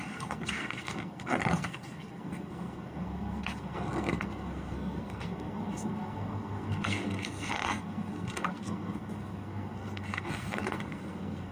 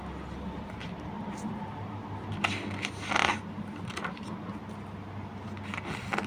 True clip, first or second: second